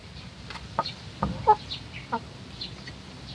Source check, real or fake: real